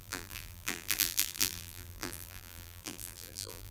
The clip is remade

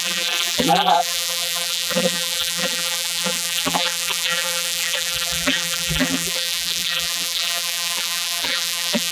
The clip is remade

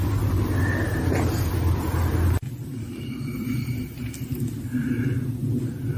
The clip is recorded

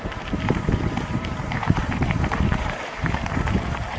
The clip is remade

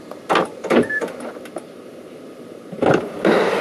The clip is recorded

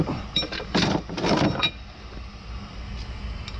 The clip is recorded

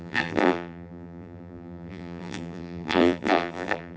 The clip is remade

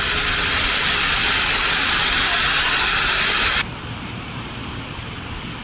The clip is recorded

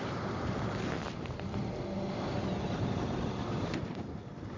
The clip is remade